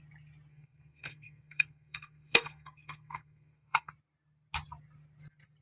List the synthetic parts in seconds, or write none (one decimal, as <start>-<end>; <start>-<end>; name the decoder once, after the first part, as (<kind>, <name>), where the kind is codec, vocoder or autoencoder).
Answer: 0.5-3.9 (codec, SNAC)